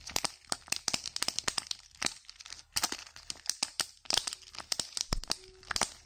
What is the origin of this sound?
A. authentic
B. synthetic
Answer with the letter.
A